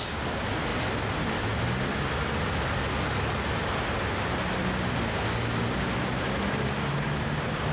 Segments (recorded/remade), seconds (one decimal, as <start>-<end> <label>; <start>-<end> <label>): 0.0-7.7 recorded